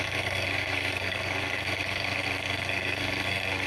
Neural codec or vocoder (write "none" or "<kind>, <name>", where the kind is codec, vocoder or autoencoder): codec, SNAC